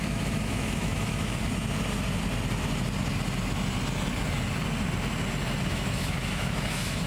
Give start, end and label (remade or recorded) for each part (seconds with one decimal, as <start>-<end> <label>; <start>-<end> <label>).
0.0-1.4 remade; 1.4-5.6 recorded; 5.6-7.1 remade